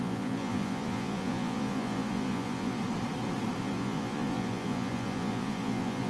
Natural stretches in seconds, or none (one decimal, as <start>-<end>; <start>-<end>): 2.8-3.6